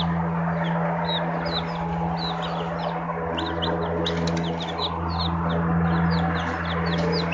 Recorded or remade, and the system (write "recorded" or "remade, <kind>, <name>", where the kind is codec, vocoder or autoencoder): recorded